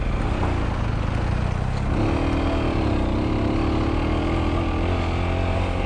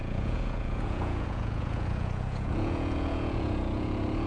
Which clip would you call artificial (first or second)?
second